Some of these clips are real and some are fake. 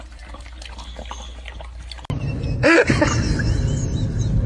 real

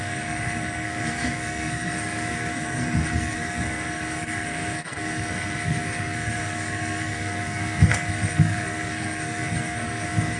fake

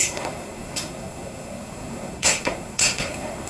fake